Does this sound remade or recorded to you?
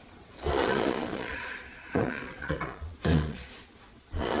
remade